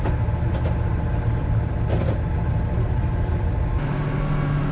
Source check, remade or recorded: recorded